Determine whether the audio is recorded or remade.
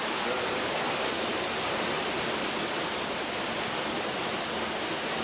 remade